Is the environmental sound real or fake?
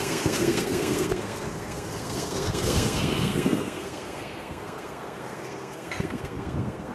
fake